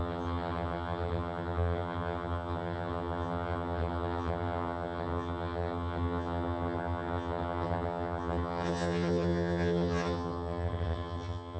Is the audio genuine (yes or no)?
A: no